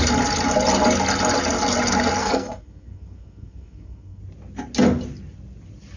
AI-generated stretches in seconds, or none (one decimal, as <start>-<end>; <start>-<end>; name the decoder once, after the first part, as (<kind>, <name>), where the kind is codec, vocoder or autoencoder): 2.2-4.2 (codec, SNAC)

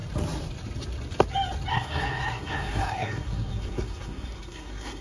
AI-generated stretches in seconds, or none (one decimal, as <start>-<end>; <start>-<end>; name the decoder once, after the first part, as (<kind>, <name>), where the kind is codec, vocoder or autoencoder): 1.7-5.0 (codec, SNAC)

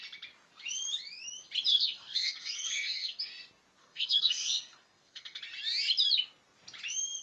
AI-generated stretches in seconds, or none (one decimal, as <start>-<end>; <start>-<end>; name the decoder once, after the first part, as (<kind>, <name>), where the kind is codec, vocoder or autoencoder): 1.7-3.2 (codec, SNAC); 3.8-5.4

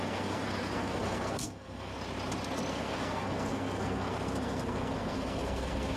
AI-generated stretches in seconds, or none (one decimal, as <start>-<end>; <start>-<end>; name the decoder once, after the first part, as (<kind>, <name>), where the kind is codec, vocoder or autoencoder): 0.0-1.9 (codec, SNAC); 2.7-6.0

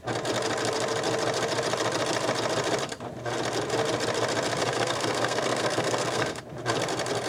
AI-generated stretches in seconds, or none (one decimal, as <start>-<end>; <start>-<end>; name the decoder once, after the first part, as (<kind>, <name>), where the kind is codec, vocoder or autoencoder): 4.6-6.4 (codec, SNAC)